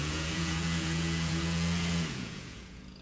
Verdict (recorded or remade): remade